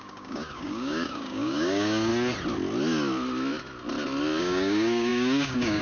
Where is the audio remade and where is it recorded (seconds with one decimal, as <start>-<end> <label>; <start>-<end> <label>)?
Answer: 0.0-2.1 remade; 2.1-4.4 recorded; 4.4-5.8 remade